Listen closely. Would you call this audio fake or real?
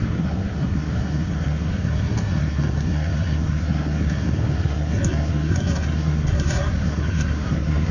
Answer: fake